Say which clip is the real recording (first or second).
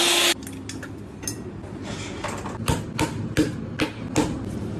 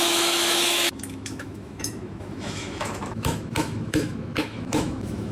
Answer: first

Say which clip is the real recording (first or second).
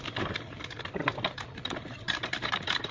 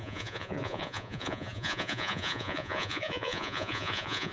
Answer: first